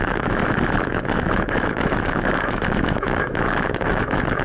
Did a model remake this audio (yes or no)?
yes